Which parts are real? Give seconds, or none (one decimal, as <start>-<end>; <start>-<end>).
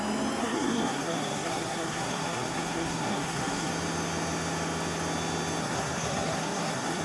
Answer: 0.0-0.4; 3.7-5.6